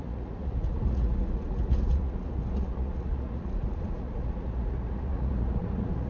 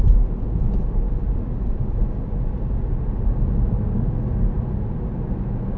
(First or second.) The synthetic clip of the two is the first